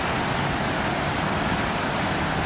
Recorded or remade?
recorded